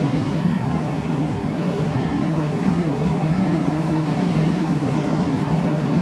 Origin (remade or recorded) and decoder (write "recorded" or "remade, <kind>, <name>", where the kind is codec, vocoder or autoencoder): remade, codec, SNAC